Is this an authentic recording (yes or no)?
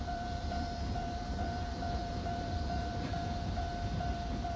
no